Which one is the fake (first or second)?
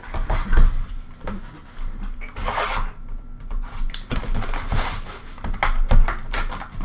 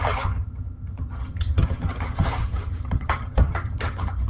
second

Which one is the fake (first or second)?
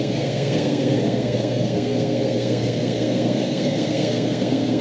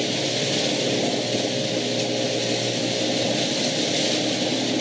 first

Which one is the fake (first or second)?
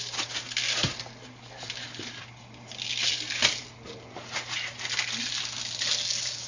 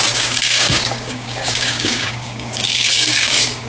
second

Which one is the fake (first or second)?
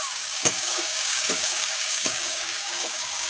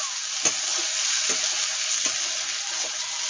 first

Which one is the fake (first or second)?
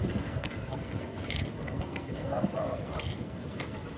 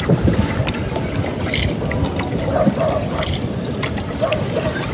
first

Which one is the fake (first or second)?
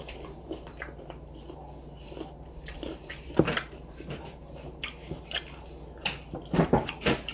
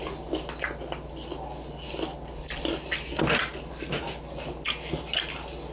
first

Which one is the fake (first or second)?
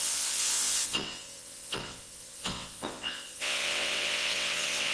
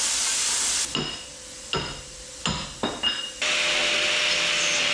first